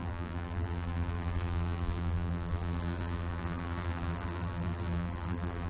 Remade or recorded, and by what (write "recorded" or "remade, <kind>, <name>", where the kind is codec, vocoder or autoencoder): remade, vocoder, BigVGAN v2